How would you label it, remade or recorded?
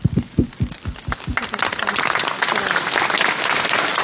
recorded